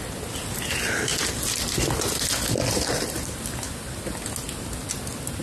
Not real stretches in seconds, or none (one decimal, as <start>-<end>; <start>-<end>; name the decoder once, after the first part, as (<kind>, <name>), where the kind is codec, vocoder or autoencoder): none